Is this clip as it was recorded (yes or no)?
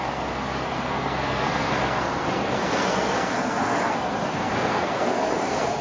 no